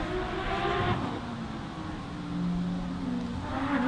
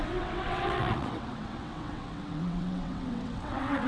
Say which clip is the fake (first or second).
second